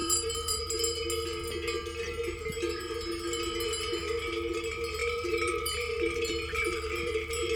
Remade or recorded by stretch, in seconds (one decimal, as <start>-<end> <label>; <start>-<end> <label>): 0.0-0.6 remade; 0.6-5.0 recorded; 5.0-7.6 remade